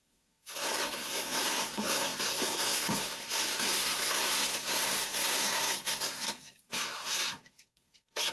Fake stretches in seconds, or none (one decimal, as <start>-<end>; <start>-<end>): 0.0-8.3